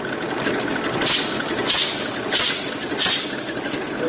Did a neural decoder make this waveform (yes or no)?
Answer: no